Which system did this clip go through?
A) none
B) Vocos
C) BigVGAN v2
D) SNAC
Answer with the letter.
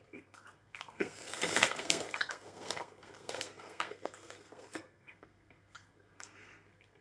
D